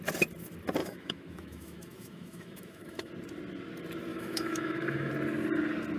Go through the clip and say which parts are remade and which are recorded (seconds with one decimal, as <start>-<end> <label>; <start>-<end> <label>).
0.0-0.8 recorded; 0.8-3.1 remade; 3.1-4.1 recorded; 4.1-5.1 remade; 5.1-6.0 recorded